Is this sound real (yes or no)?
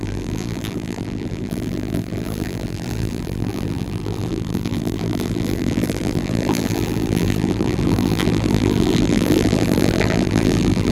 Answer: no